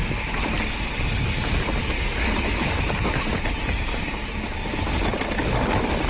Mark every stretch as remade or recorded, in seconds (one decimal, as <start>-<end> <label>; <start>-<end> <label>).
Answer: 0.0-2.1 recorded; 2.1-3.6 remade; 3.6-4.7 recorded; 4.7-5.5 remade; 5.5-6.1 recorded